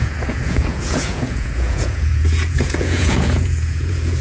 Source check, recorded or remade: remade